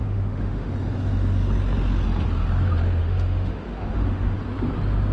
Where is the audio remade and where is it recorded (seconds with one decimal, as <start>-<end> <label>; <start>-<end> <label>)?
0.0-0.7 remade; 0.7-3.0 recorded; 3.0-4.3 remade; 4.3-5.1 recorded